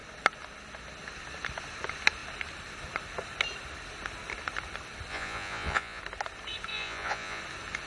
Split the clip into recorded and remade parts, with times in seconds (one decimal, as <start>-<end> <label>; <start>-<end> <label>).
0.0-5.1 recorded; 5.1-6.0 remade; 6.0-6.7 recorded; 6.7-7.4 remade; 7.4-7.9 recorded